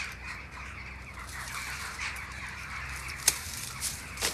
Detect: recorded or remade remade